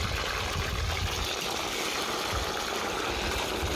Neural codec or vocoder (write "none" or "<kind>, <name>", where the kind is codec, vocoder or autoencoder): none